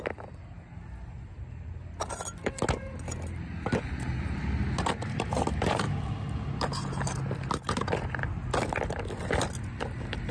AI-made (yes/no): no